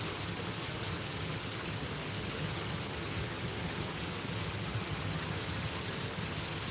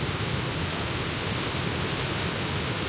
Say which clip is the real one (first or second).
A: second